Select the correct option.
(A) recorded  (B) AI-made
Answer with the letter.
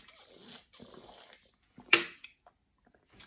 A